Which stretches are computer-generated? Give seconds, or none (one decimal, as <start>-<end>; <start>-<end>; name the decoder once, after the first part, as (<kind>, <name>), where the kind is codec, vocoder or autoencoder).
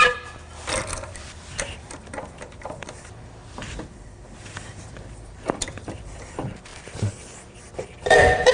0.0-8.5 (vocoder, BigVGAN v2)